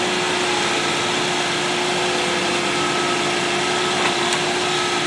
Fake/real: real